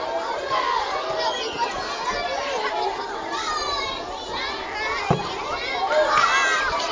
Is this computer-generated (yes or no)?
no